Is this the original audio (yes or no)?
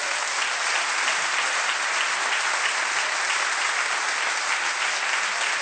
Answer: yes